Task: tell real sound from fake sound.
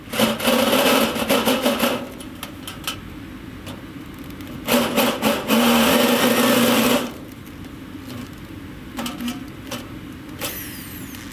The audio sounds real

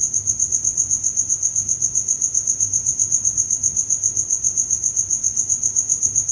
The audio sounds real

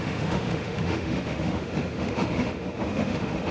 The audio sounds fake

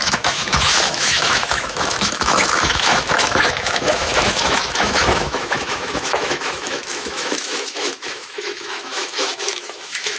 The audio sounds fake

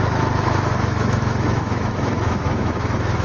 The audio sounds fake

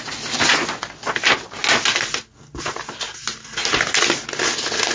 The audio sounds real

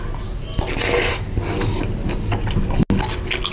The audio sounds real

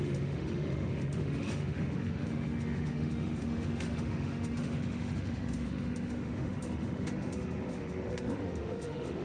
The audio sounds fake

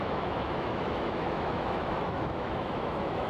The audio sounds fake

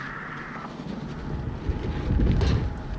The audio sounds real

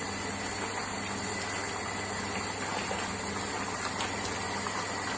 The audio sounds real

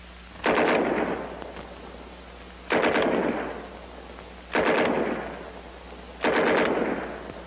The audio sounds real